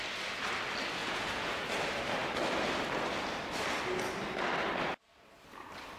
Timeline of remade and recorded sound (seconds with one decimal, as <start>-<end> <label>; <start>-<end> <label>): 0.0-1.0 recorded; 1.0-1.6 remade; 1.6-6.0 recorded